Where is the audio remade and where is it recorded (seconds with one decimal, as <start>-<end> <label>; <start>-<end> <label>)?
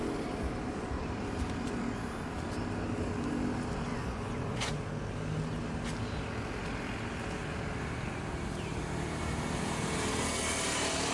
0.0-3.9 recorded; 3.9-4.7 remade; 4.7-11.1 recorded